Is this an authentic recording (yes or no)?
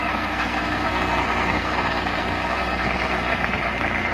no